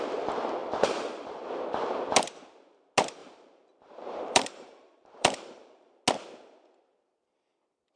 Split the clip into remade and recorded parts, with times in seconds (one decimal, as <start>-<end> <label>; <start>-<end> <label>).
0.0-0.6 recorded; 0.6-1.4 remade; 1.4-3.2 recorded; 3.2-6.0 remade; 6.0-8.0 recorded